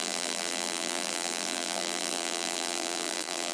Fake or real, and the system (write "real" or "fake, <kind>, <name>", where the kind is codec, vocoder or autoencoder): fake, vocoder, BigVGAN v2